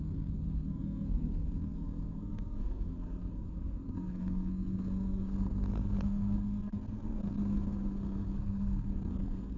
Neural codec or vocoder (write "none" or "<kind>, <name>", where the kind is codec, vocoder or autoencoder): codec, SNAC